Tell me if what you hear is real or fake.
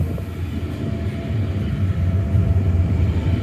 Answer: real